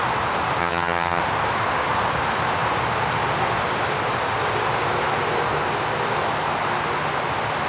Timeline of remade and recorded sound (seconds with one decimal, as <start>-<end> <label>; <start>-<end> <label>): 0.0-0.6 recorded; 0.6-1.2 remade; 1.2-7.7 recorded